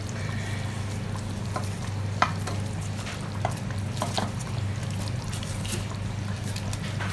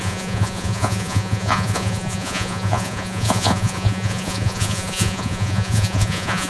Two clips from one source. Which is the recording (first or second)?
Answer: first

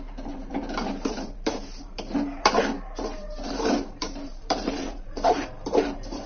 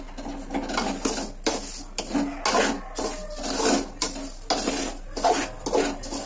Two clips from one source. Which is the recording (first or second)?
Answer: second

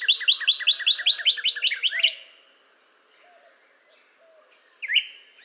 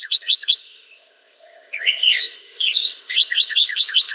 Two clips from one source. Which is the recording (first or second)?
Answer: first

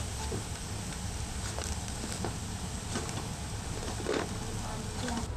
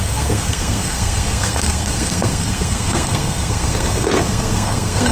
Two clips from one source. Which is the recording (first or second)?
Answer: first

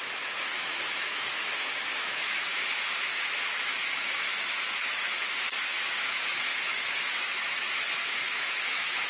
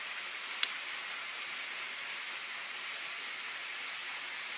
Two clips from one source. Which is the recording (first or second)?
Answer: second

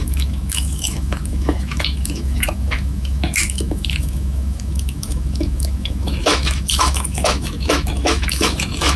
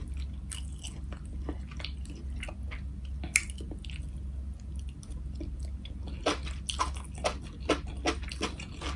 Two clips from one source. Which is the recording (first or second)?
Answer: second